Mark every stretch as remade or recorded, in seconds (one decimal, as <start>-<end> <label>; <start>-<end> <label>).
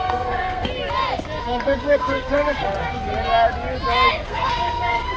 0.0-0.7 remade; 0.7-1.4 recorded; 1.4-3.1 remade; 3.1-4.1 recorded; 4.1-5.2 remade